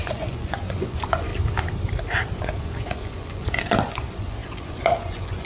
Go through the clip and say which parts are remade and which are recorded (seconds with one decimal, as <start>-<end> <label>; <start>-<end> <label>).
0.0-1.3 remade; 1.3-2.3 recorded; 2.3-5.5 remade